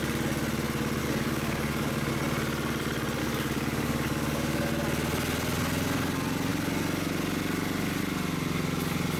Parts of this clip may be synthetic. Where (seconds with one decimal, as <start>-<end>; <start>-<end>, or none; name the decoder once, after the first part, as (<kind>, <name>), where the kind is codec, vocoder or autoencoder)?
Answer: 1.0-2.1 (codec, DAC); 3.2-4.7